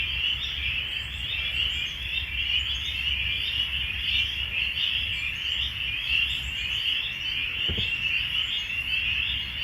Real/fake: real